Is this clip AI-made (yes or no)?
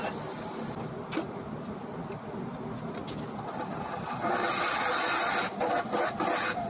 no